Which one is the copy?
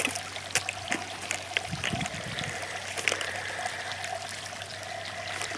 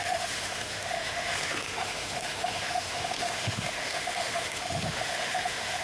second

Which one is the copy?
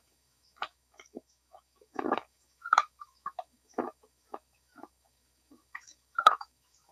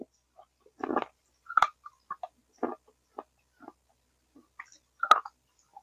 first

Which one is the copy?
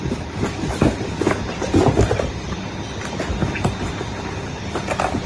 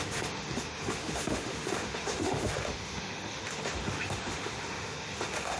second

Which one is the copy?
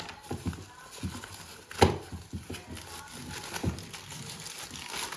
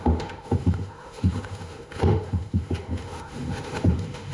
second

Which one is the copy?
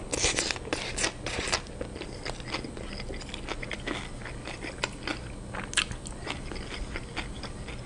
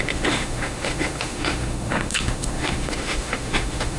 second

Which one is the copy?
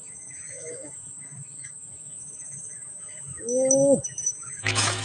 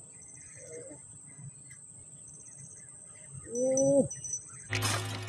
first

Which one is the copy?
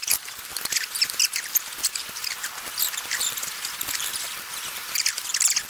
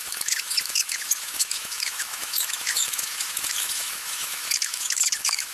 second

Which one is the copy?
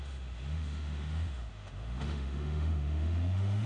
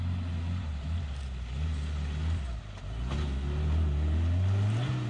first